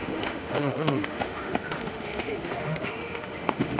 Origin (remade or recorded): remade